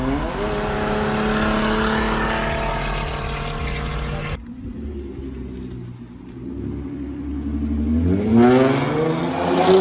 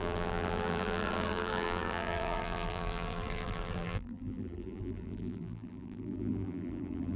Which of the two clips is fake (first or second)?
second